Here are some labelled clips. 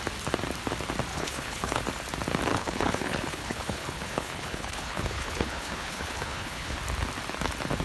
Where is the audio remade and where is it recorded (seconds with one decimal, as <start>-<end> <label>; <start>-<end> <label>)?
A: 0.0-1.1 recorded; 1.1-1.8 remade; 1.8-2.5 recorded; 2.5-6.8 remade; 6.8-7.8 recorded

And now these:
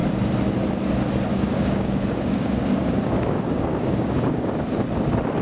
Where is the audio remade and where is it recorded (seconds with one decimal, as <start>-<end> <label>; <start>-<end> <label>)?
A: 0.0-1.3 recorded; 1.3-4.5 remade; 4.5-5.4 recorded

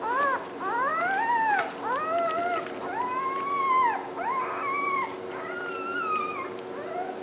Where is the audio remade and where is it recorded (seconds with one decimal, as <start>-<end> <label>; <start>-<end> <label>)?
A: 0.0-7.2 recorded

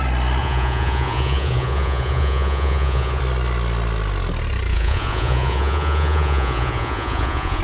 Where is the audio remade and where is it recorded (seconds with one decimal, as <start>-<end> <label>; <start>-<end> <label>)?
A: 0.0-0.4 recorded; 0.4-3.2 remade; 3.2-4.7 recorded; 4.7-7.6 remade

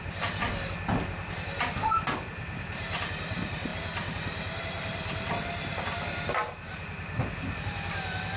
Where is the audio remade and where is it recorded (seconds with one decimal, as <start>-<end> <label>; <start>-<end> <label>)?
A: 0.0-8.4 recorded